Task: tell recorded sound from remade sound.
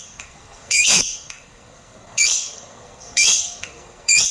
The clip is remade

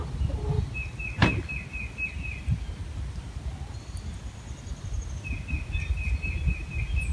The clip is recorded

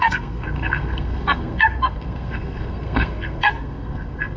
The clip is remade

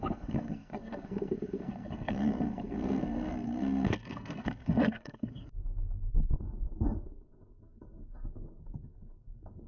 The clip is remade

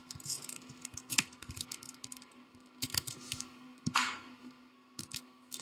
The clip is remade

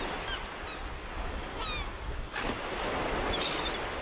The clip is recorded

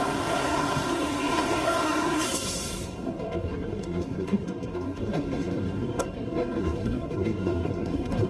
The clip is remade